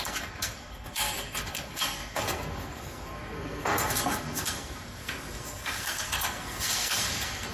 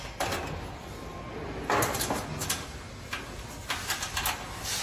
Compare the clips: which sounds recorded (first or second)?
second